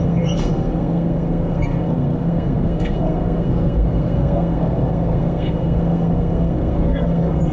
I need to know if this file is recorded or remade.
remade